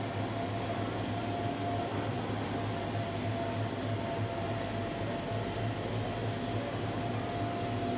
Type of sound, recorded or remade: recorded